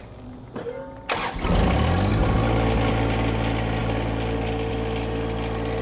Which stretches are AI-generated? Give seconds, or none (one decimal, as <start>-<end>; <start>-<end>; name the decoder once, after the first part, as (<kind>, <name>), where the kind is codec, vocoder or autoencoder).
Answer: none